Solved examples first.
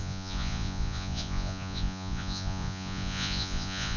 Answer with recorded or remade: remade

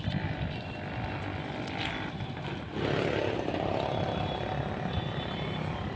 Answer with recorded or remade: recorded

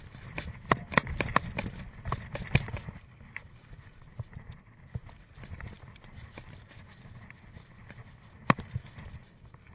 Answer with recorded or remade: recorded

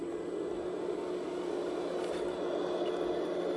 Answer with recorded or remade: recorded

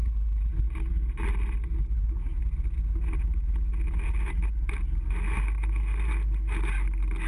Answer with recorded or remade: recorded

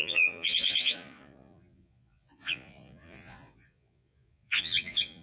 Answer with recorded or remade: remade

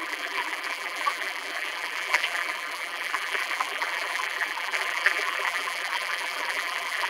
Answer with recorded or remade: remade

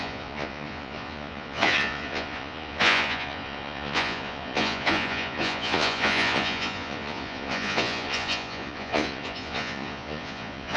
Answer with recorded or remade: remade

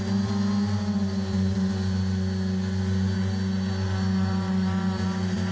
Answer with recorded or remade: recorded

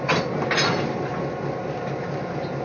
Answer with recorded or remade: recorded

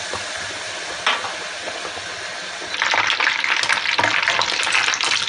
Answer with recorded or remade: recorded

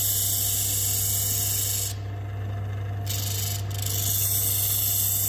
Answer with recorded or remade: recorded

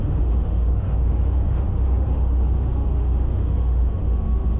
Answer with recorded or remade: remade